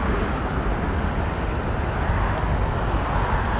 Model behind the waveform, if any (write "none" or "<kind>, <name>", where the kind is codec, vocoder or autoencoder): none